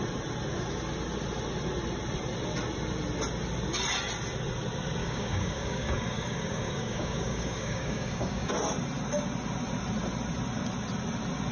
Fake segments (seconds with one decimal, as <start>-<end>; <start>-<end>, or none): 5.0-8.5